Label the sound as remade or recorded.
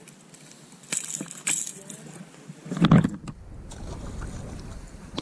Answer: recorded